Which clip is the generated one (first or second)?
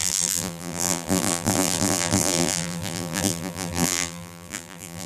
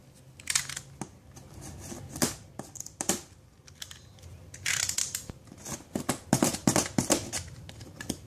first